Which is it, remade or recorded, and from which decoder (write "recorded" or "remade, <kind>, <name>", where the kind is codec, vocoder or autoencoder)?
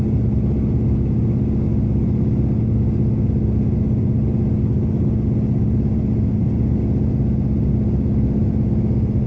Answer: recorded